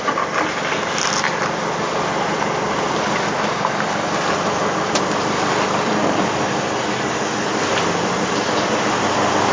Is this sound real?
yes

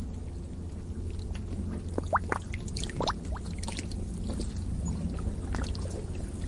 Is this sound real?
yes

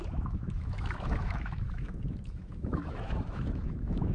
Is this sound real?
no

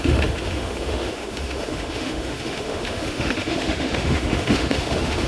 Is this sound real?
no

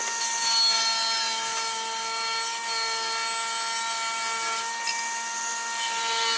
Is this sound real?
yes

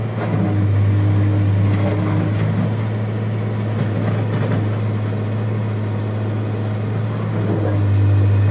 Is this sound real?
yes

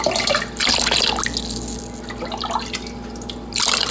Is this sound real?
yes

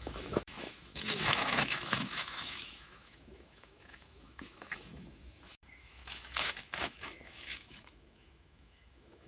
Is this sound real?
no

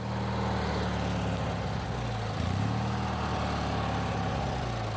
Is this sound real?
yes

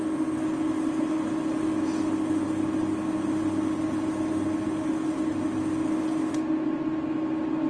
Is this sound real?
yes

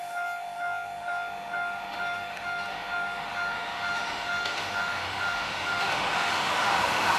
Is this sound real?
no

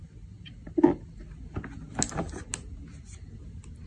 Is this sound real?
yes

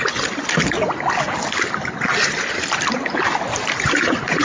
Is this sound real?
yes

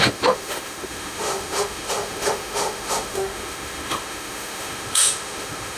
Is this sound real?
no